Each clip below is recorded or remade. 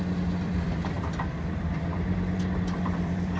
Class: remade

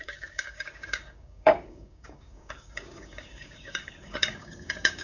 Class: remade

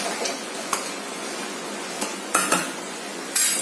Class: remade